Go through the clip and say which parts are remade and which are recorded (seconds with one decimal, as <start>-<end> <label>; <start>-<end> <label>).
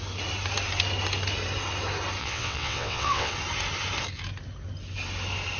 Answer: 0.0-2.2 recorded; 2.2-3.3 remade; 3.3-5.6 recorded